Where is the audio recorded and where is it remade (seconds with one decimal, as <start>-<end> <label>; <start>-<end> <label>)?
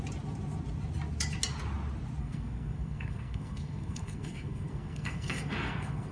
0.0-2.2 recorded; 2.2-6.1 remade